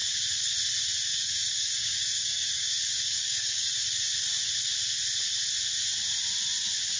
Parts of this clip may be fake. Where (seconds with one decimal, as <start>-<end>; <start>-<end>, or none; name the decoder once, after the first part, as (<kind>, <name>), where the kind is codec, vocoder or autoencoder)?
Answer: 1.1-3.7 (codec, DAC)